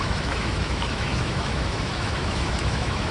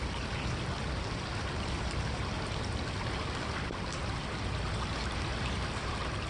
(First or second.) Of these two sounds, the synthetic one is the first